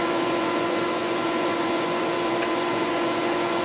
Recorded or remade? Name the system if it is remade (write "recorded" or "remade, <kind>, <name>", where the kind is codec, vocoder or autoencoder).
remade, vocoder, Vocos